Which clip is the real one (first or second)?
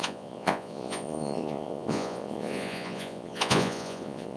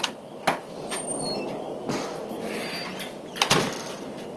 second